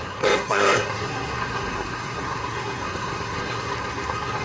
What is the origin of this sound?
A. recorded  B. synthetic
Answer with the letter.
B